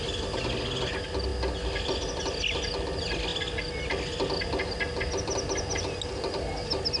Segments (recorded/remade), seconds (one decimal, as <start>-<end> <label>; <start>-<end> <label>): 0.0-7.0 recorded